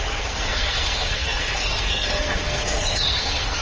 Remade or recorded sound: remade